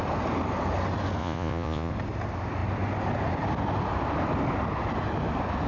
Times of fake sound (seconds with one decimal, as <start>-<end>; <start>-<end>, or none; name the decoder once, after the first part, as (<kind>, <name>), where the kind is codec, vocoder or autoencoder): 1.2-1.9 (vocoder, Vocos)